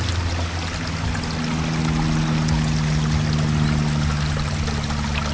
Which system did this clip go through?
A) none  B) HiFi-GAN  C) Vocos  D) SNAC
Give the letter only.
A